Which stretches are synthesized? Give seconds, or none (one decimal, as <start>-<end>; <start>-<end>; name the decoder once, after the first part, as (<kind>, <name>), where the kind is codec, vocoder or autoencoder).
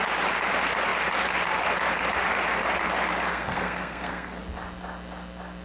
3.3-4.4 (codec, SNAC)